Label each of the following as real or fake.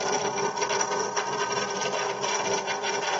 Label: fake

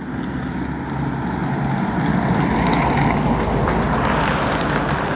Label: real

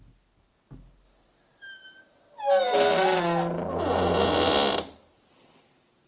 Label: real